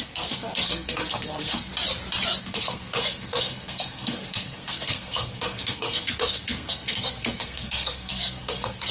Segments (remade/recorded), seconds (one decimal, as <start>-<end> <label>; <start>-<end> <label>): 0.0-1.7 remade; 1.7-2.4 recorded; 2.4-8.9 remade